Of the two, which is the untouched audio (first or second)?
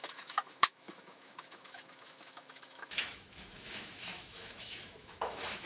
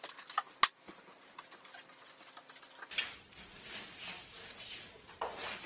second